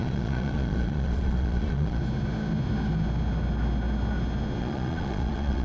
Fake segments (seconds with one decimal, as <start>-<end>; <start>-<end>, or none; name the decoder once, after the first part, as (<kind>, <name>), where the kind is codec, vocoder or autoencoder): 0.0-2.0 (vocoder, Vocos); 4.6-5.6